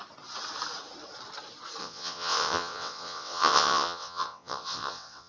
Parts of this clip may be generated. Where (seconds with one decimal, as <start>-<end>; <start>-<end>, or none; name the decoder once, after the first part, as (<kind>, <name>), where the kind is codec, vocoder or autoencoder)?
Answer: 1.8-5.3 (vocoder, WaveNeXt)